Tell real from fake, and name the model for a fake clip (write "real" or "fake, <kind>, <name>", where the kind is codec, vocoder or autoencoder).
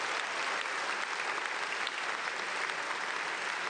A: real